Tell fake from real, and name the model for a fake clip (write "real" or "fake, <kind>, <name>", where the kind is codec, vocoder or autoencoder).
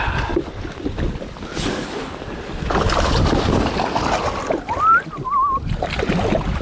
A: real